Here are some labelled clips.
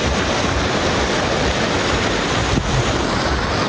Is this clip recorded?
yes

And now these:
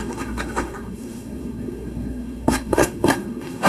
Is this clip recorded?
no